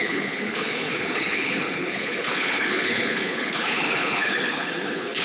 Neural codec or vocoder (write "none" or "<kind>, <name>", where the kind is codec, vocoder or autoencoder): codec, HILCodec